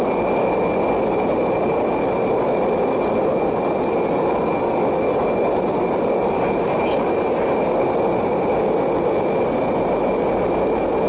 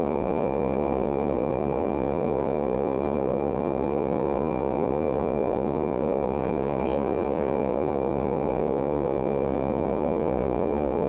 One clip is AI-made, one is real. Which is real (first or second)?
first